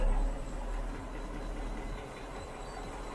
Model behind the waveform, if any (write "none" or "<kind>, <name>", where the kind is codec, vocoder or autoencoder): none